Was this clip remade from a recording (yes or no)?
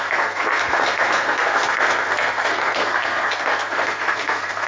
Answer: yes